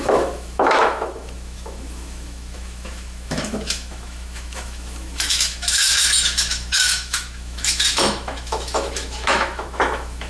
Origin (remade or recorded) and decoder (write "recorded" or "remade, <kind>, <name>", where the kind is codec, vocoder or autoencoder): remade, autoencoder, DAC-VAE